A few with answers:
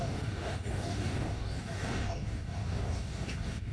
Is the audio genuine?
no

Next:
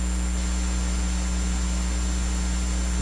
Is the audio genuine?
yes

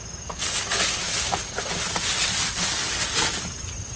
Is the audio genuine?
yes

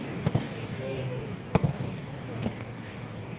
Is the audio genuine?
no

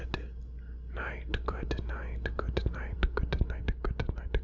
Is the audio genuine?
yes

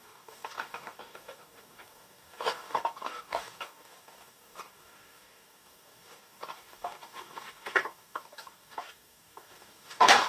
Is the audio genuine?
no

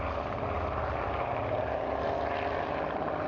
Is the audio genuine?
yes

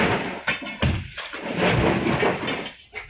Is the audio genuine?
yes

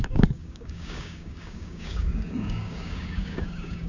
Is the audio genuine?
no